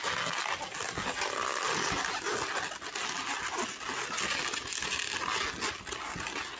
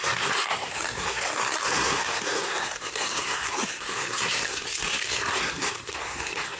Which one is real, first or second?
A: first